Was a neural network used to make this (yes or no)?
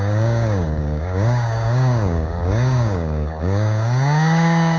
yes